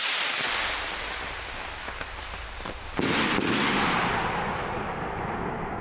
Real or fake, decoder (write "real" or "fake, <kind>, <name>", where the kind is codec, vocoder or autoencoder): real